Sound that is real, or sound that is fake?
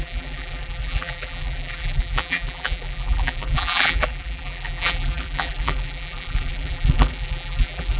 fake